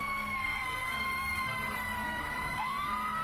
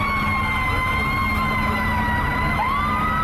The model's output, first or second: first